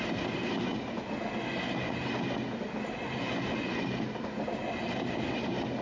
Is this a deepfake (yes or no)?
no